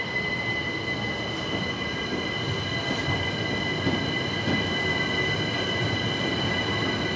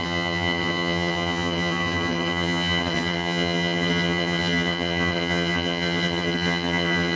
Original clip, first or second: first